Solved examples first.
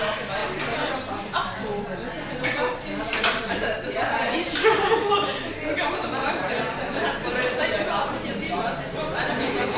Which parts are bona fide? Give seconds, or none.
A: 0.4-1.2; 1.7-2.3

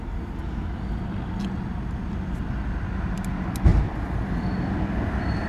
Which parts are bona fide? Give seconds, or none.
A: 0.0-3.7; 4.6-5.5

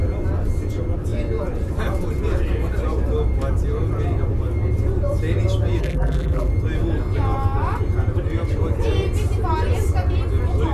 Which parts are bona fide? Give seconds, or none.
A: 0.0-5.8; 6.5-10.7

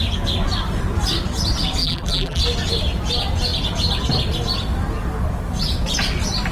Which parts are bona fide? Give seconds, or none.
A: 0.0-1.8; 2.4-6.5

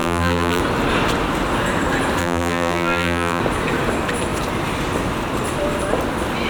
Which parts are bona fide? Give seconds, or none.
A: 0.6-2.2; 3.4-6.5

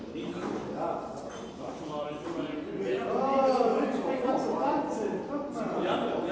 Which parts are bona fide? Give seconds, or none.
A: 0.0-0.6; 3.2-3.7; 4.3-6.3

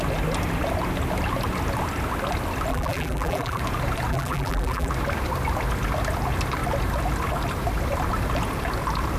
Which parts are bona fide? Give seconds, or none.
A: 0.0-2.7; 3.6-4.1; 4.9-9.2

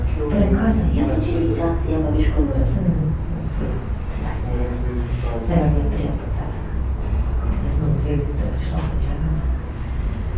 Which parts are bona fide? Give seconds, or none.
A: 0.0-2.4; 3.1-7.9; 8.5-10.4